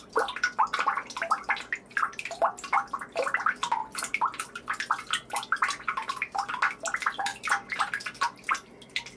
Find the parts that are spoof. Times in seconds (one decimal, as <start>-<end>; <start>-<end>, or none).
3.8-4.7; 6.0-6.5; 7.3-7.8